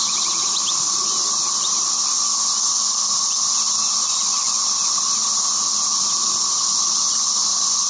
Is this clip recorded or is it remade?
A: recorded